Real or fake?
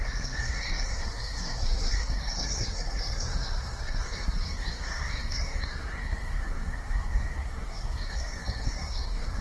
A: fake